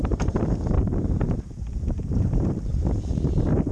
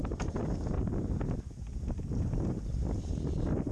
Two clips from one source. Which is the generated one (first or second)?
first